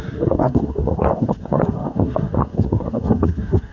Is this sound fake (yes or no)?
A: yes